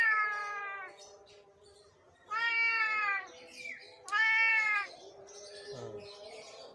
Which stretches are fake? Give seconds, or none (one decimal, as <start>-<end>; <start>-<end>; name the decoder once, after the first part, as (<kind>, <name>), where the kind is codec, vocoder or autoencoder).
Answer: 0.4-1.3 (vocoder, BigVGAN v2); 1.9-3.3; 4.5-5.3

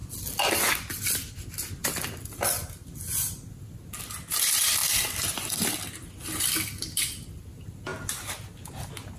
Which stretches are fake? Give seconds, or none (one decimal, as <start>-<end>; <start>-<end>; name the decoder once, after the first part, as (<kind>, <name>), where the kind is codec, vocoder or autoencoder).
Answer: 1.8-3.8 (vocoder, BigVGAN v2); 4.8-5.8